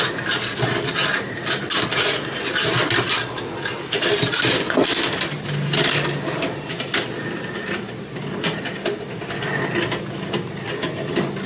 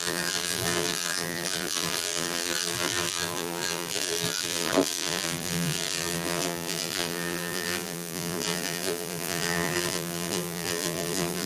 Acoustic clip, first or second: first